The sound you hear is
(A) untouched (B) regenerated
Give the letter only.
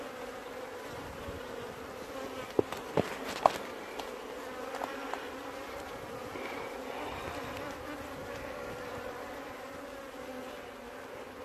A